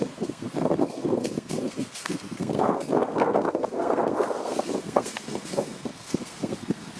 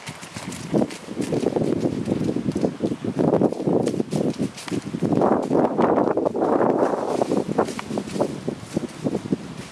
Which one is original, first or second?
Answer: second